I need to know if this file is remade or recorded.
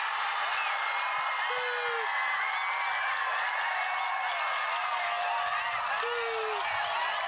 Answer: recorded